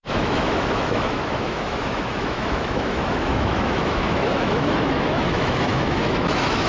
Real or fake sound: fake